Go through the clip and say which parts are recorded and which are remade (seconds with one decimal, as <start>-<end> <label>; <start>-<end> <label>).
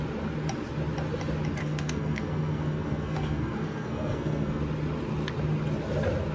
0.0-1.6 recorded; 1.6-4.6 remade; 4.6-6.3 recorded